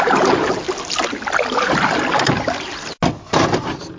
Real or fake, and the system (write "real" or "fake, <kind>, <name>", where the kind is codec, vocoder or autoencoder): real